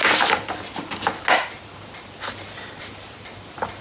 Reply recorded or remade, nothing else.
recorded